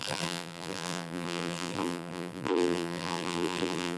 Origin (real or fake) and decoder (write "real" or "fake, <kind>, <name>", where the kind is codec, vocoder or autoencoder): fake, vocoder, BigVGAN v2